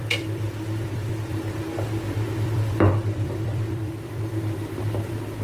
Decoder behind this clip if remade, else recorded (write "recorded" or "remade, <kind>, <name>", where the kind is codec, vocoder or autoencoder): remade, vocoder, BigVGAN v2